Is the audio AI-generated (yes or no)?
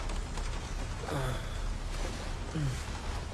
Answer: no